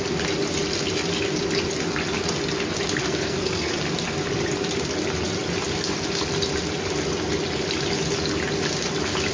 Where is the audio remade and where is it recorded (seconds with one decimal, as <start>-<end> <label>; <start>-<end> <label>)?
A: 0.0-3.0 recorded; 3.0-3.7 remade; 3.7-9.3 recorded